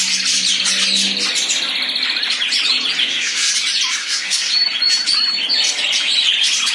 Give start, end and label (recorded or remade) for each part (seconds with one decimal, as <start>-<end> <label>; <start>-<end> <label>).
0.0-3.0 recorded; 3.0-3.5 remade; 3.5-4.0 recorded; 4.0-4.5 remade; 4.5-6.7 recorded